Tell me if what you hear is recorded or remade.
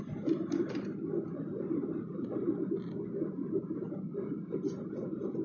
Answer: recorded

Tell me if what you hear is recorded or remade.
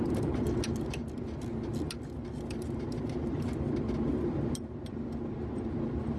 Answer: remade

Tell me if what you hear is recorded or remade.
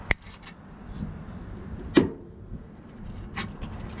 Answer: recorded